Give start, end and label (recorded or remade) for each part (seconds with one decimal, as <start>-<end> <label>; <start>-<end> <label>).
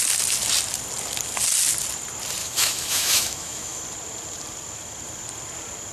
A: 0.0-2.4 recorded; 2.4-3.8 remade; 3.8-5.9 recorded